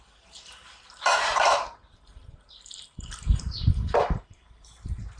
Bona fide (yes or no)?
no